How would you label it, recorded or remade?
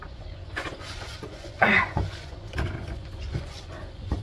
remade